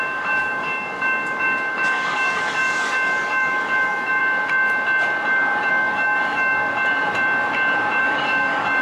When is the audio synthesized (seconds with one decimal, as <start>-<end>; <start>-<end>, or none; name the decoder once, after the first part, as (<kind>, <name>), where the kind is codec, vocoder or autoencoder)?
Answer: 0.0-4.2 (codec, DAC); 5.7-6.7; 8.0-8.8